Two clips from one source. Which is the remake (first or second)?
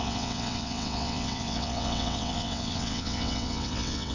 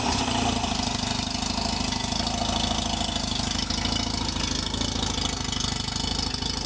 first